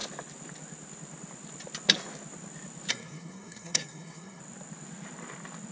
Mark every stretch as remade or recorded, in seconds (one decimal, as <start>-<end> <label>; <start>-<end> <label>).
0.0-2.9 recorded; 2.9-4.4 remade; 4.4-5.7 recorded